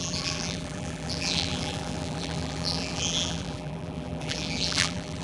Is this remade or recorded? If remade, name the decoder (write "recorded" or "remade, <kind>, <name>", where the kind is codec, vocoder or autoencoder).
remade, vocoder, BigVGAN v2